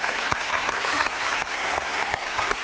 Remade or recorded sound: remade